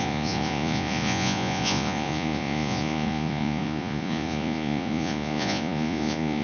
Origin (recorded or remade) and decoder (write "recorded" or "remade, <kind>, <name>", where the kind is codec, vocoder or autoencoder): remade, vocoder, Vocos